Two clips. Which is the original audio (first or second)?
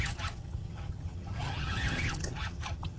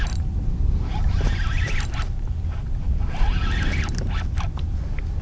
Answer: second